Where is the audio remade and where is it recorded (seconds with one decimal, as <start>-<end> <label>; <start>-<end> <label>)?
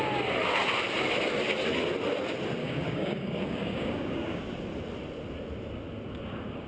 0.0-2.6 recorded; 2.6-4.4 remade; 4.4-6.7 recorded